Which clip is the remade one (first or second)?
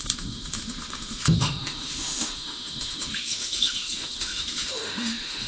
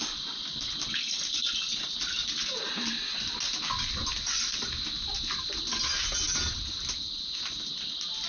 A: first